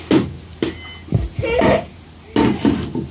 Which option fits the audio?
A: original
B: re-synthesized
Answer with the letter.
A